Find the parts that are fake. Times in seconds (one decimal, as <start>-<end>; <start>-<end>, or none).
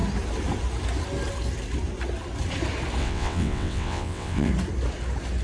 3.0-4.5